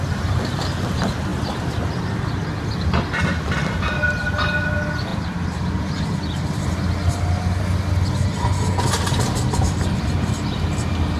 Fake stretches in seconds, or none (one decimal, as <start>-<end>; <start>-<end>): none